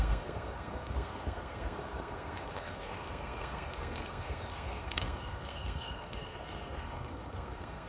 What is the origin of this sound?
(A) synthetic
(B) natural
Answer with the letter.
A